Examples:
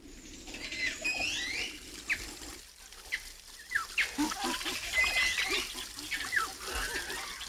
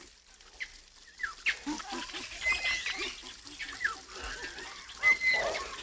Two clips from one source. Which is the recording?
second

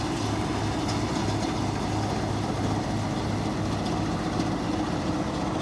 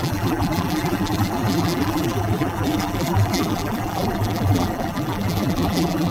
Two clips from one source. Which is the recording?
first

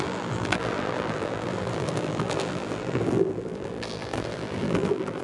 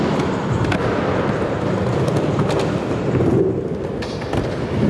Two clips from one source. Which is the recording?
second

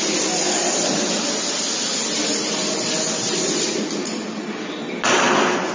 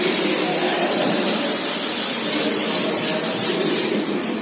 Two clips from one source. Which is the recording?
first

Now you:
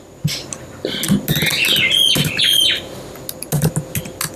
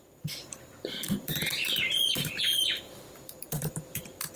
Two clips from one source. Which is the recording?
first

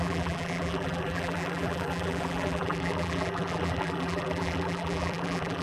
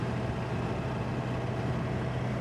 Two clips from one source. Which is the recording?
second